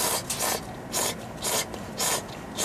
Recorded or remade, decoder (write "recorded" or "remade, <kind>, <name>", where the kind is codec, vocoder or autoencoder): recorded